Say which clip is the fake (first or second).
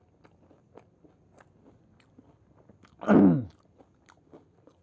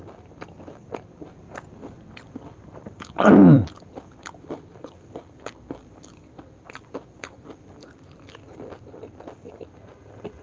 second